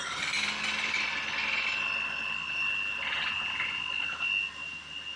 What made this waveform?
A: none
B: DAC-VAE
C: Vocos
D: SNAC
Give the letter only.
A